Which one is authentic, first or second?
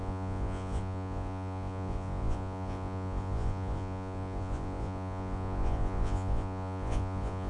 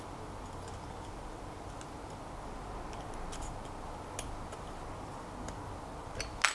second